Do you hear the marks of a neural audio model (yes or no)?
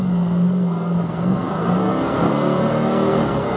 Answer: yes